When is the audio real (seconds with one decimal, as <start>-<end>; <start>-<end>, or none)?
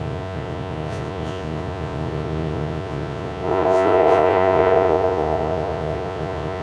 none